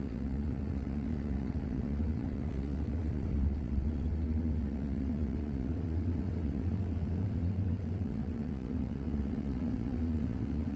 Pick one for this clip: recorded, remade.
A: remade